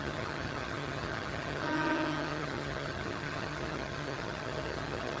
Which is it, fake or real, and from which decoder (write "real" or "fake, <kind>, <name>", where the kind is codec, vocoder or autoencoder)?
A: fake, vocoder, HiFi-GAN